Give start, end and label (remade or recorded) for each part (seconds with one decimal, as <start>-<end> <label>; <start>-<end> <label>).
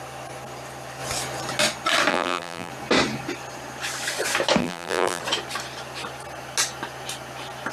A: 0.0-2.1 recorded; 2.1-2.7 remade; 2.7-4.6 recorded; 4.6-5.2 remade; 5.2-7.7 recorded